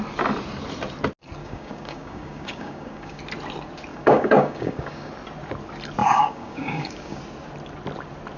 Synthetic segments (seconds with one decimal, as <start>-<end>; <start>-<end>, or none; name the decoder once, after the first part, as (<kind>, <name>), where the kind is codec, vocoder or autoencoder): 1.4-3.2 (codec, DAC); 3.9-5.1; 6.0-7.2